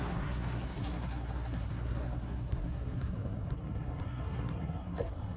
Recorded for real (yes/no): no